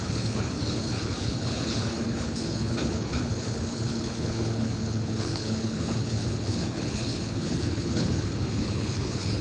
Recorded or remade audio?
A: remade